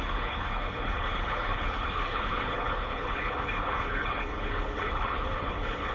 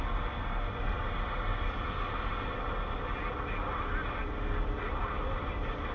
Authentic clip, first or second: second